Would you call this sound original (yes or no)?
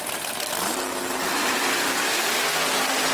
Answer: no